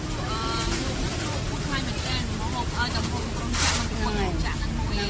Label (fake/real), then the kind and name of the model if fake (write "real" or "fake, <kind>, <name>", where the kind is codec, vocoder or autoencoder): real